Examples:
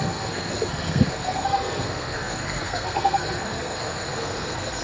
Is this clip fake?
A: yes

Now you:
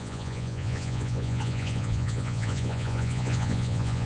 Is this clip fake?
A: yes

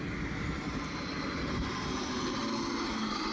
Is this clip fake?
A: no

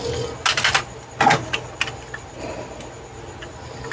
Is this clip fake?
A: no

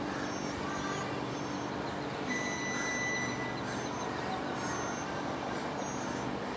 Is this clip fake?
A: no